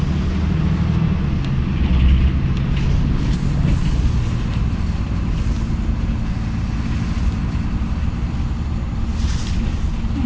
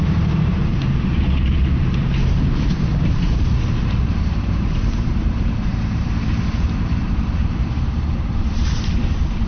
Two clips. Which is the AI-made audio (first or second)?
second